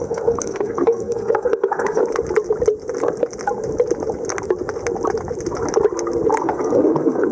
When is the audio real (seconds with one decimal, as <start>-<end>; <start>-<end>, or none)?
2.0-6.4